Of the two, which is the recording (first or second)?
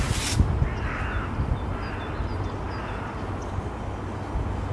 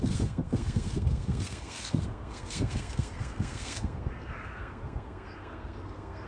first